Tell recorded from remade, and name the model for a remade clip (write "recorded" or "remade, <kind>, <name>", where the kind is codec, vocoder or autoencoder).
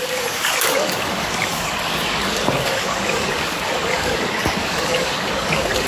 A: remade, codec, DAC